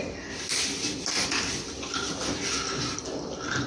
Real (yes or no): yes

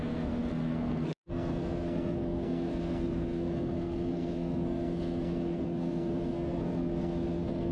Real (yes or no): no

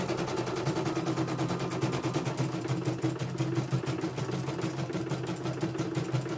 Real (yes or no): yes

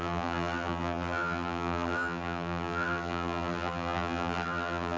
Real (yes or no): no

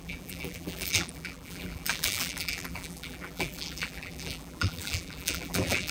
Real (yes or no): no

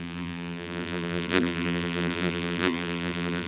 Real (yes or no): no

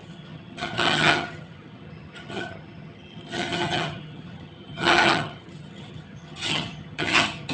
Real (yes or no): no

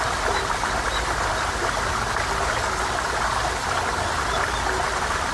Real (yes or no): yes